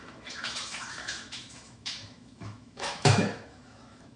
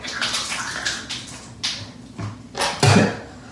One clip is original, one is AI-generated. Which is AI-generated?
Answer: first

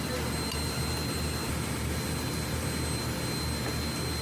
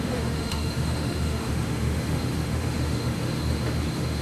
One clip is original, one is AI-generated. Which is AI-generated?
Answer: second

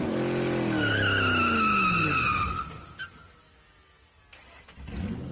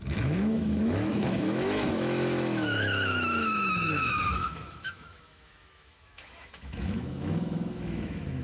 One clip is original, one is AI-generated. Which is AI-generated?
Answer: second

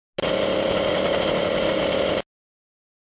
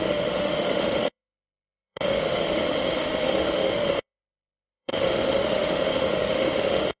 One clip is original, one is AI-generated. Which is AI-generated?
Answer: second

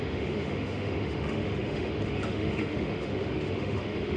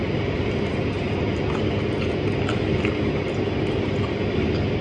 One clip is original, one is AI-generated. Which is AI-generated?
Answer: first